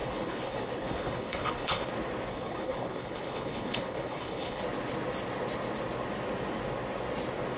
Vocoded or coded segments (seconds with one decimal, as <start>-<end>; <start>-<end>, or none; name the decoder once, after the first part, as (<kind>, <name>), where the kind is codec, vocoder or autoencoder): 0.0-1.9 (codec, HILCodec); 2.3-4.6